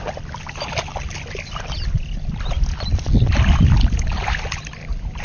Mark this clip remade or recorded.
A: recorded